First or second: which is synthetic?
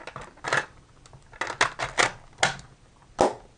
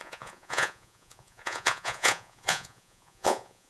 second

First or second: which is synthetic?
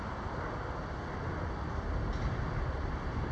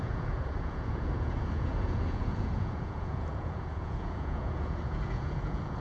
second